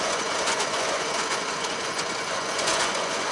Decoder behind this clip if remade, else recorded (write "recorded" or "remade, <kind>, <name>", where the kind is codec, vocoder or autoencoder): remade, vocoder, Vocos